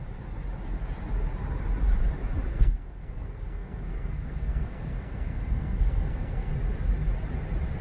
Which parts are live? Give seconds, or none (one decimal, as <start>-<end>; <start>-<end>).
0.0-2.5; 6.5-7.8